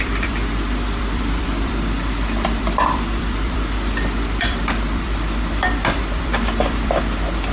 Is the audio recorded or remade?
remade